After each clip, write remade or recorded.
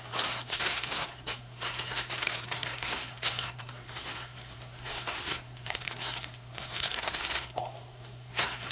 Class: remade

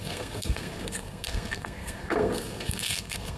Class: remade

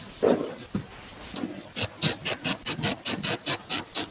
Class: remade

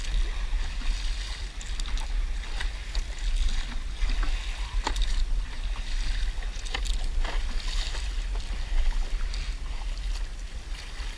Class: recorded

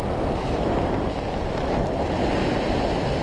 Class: recorded